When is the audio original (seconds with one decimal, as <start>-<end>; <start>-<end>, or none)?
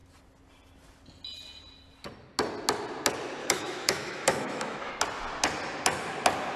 0.0-3.4; 4.9-6.6